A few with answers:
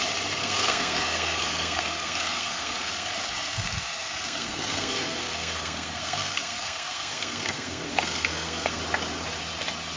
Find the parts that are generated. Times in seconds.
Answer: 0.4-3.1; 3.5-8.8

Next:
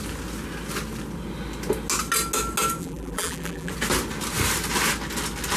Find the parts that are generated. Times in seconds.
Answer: 2.8-3.7

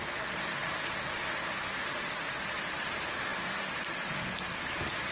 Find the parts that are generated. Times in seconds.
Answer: none

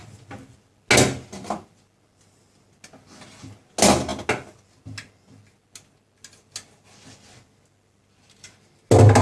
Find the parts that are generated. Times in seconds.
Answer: none

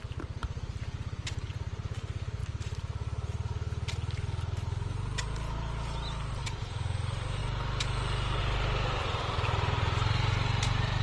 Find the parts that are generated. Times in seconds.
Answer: 0.0-2.4; 6.3-7.4; 8.4-11.0

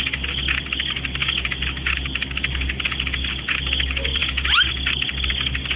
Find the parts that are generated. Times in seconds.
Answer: none

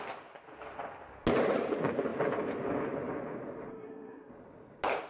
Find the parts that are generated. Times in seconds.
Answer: 3.7-4.3

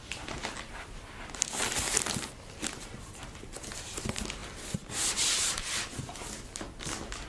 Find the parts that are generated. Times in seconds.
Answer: none